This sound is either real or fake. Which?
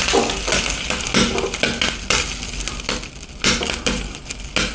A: real